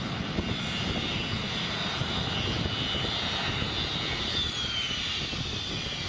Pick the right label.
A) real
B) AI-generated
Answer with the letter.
A